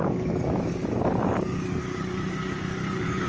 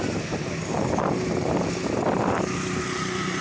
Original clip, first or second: second